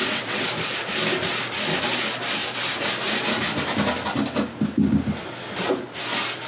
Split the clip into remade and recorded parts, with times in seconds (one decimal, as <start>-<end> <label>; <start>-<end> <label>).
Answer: 0.0-0.5 remade; 0.5-6.5 recorded